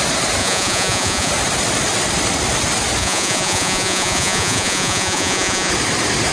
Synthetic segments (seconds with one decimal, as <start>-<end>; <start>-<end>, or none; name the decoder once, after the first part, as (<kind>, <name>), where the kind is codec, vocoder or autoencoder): 0.4-1.3 (vocoder, Vocos); 3.0-5.7